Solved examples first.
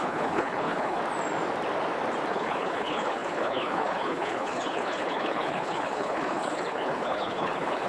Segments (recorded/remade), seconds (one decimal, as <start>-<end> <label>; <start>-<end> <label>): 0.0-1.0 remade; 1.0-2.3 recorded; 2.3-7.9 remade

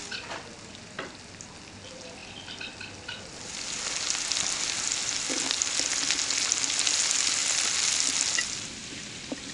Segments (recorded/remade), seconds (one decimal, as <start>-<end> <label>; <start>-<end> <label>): 0.0-9.5 recorded

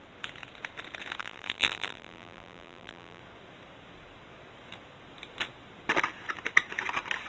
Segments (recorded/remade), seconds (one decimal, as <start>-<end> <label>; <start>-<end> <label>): 0.0-1.2 recorded; 1.2-3.2 remade; 3.2-7.3 recorded

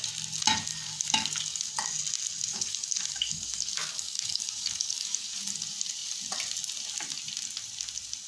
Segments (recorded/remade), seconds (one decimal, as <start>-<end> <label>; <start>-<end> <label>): 0.0-0.7 recorded; 0.7-1.7 remade; 1.7-2.5 recorded; 2.5-5.4 remade; 5.4-8.3 recorded